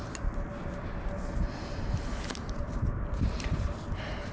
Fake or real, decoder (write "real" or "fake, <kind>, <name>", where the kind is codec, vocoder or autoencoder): real